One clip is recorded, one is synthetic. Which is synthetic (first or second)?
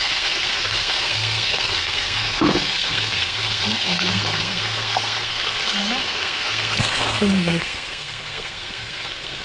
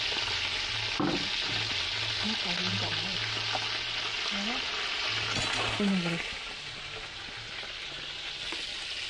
first